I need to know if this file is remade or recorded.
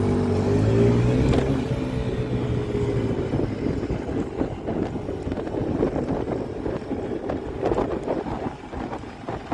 recorded